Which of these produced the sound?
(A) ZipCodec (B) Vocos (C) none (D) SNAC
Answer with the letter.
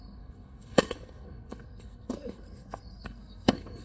D